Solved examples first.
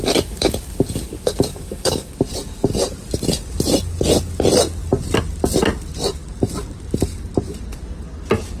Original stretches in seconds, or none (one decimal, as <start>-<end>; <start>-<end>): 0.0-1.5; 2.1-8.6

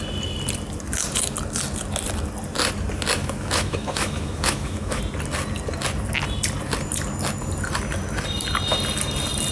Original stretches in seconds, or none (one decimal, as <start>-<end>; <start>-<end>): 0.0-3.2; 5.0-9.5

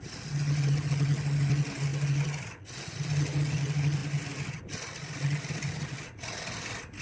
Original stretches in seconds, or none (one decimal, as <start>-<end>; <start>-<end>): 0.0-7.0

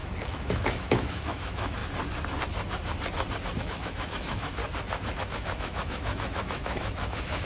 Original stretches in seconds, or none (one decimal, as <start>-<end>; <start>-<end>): 1.8-3.6; 4.6-5.2